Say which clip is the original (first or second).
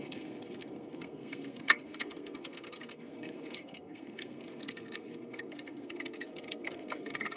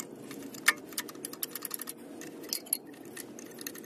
second